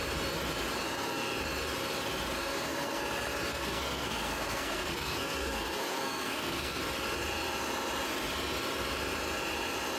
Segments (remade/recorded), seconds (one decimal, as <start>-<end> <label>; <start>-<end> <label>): 0.0-2.4 recorded; 2.4-3.0 remade; 3.0-3.5 recorded; 3.5-6.8 remade; 6.8-10.0 recorded